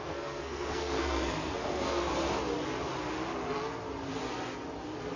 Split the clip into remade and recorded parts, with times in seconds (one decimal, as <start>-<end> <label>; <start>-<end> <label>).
0.0-2.1 remade; 2.1-5.2 recorded